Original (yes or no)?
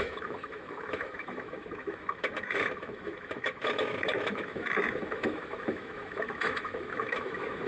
no